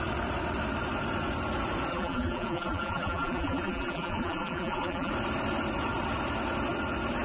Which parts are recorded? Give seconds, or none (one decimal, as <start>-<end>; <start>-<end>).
0.0-1.9; 5.1-7.2